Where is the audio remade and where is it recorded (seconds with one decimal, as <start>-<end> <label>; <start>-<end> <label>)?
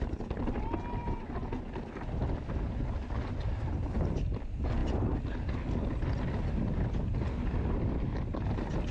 0.0-1.0 recorded; 1.0-1.7 remade; 1.7-8.9 recorded